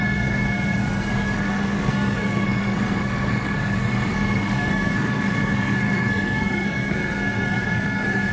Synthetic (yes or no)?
yes